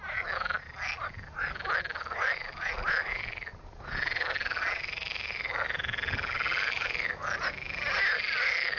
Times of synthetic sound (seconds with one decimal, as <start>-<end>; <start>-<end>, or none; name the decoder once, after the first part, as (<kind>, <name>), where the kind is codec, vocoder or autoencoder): none